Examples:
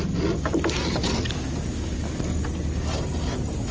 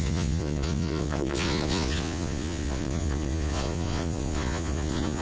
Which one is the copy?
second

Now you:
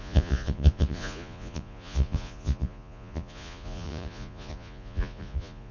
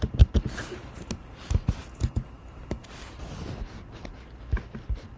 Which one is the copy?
first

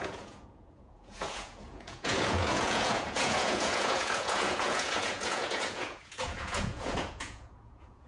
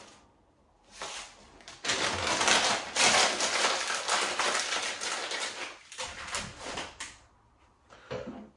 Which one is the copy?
first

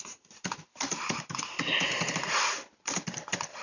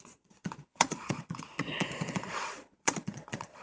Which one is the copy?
second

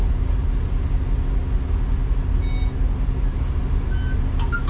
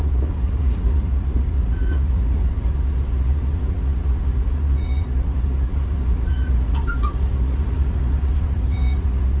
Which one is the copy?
second